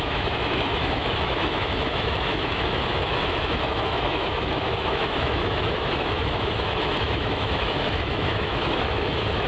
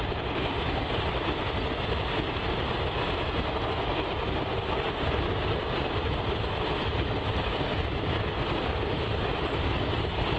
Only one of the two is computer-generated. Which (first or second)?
first